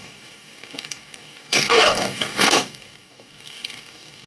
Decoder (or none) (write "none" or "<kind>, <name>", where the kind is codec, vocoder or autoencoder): codec, DAC